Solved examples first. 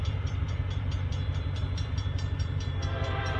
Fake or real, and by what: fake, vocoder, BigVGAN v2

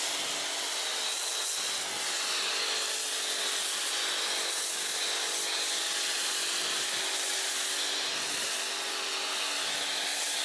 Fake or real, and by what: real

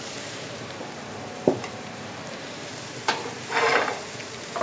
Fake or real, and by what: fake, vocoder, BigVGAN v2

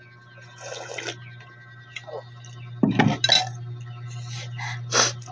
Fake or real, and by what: real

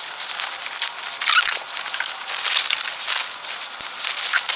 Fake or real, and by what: fake, vocoder, BigVGAN v2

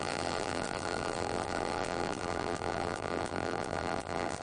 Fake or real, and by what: fake, vocoder, BigVGAN v2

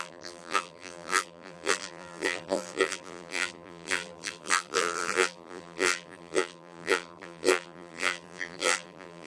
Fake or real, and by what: fake, vocoder, BigVGAN v2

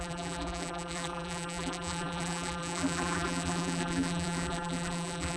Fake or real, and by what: fake, vocoder, BigVGAN v2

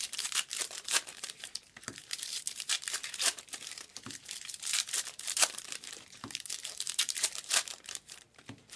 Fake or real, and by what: fake, vocoder, BigVGAN v2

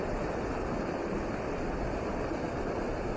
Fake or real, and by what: real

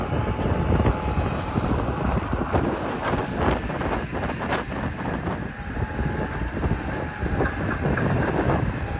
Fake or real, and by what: real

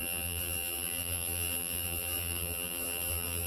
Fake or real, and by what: fake, vocoder, BigVGAN v2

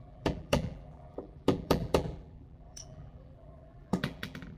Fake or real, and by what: fake, vocoder, BigVGAN v2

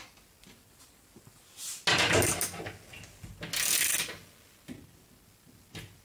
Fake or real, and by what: real